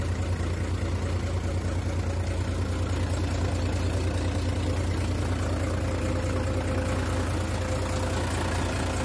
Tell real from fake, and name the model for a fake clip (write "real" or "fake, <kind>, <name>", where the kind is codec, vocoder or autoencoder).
real